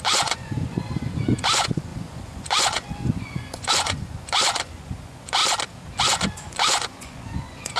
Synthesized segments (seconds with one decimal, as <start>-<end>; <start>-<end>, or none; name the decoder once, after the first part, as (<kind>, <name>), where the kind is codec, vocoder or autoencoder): 0.0-5.4 (vocoder, Vocos); 6.0-7.8